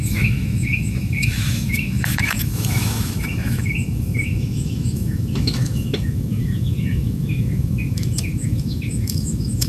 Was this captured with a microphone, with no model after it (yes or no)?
no